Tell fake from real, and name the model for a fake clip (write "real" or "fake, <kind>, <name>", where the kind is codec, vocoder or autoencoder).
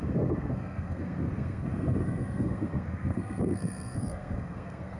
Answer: fake, codec, SNAC